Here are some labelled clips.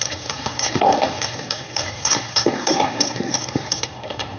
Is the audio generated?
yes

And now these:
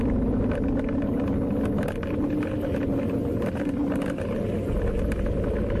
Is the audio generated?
no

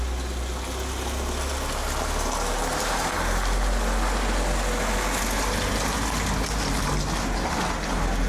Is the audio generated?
no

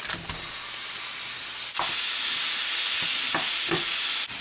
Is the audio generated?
no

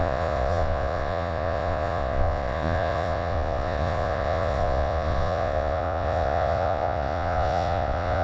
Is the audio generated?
yes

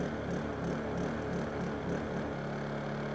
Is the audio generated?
no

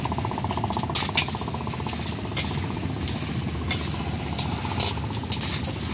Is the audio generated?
no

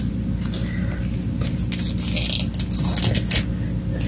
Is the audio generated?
no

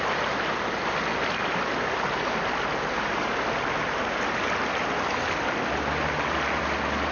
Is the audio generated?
no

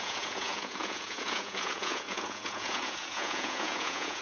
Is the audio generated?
yes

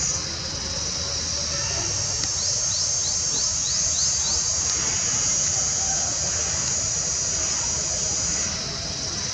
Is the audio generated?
no